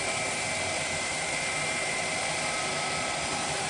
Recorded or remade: remade